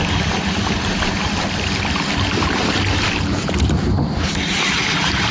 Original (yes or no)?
yes